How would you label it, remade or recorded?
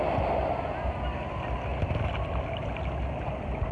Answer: recorded